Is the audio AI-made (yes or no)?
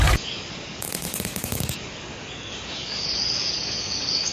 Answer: yes